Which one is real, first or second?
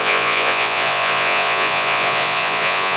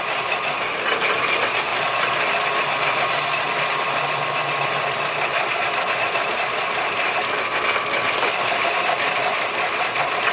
second